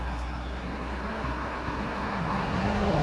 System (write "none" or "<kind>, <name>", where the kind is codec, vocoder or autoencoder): codec, SNAC